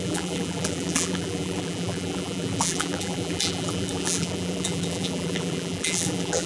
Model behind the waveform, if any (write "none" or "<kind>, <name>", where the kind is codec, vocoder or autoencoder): vocoder, BigVGAN v2